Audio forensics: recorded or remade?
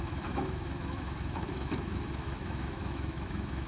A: remade